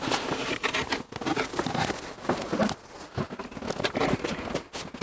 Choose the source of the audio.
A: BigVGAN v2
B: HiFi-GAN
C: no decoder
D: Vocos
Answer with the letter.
C